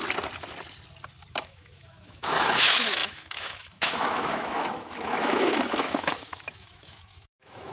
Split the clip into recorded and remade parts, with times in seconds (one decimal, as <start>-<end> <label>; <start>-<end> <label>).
0.0-1.3 recorded; 1.3-7.7 remade